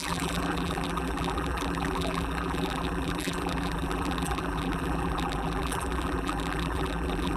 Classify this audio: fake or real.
fake